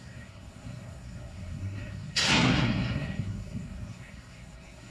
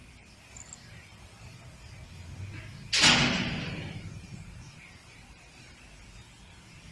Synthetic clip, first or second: first